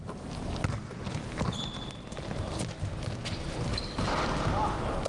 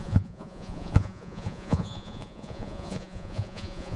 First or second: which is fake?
second